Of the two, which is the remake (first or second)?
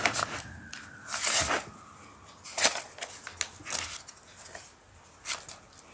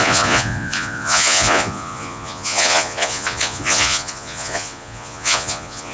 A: second